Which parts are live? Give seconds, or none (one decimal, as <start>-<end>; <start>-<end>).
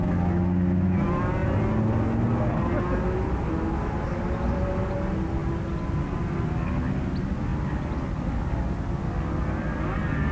0.0-10.3